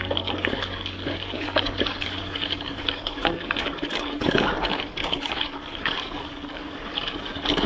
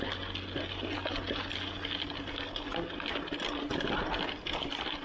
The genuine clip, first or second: second